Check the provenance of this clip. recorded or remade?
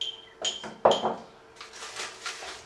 recorded